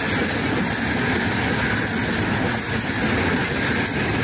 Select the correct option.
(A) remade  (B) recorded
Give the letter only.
B